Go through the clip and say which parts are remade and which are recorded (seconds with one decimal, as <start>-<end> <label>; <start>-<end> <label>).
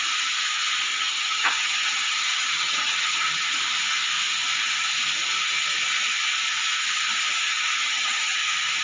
0.0-0.9 recorded; 0.9-3.6 remade; 3.6-7.8 recorded; 7.8-8.4 remade; 8.4-8.8 recorded